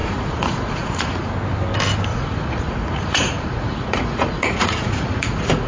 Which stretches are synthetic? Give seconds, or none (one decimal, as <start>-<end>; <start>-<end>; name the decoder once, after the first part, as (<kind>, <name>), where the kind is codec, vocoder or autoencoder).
0.0-1.3 (vocoder, Vocos); 2.1-5.7

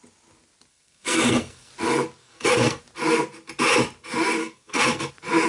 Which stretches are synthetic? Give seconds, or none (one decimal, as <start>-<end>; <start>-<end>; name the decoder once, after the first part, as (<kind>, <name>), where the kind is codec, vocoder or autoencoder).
0.7-1.7 (codec, SNAC); 2.2-2.8; 4.4-5.1

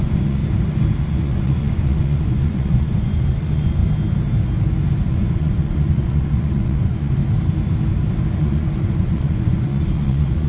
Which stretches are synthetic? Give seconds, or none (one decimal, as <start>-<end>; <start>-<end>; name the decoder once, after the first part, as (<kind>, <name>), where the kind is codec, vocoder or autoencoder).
0.0-0.4 (vocoder, Vocos); 1.0-3.8; 5.1-7.2; 8.4-10.5

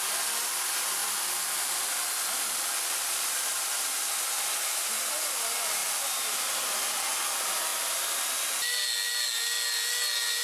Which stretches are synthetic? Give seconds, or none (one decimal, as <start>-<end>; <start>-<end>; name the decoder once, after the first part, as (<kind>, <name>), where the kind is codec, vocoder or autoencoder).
none